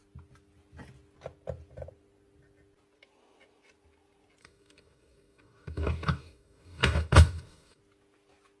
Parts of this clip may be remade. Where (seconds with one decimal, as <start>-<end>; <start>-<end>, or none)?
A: 4.4-7.8